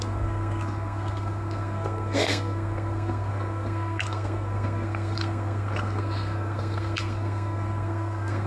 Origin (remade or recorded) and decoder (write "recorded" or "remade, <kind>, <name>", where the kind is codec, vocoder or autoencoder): remade, codec, SNAC